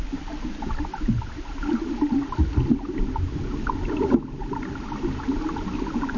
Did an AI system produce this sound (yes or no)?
no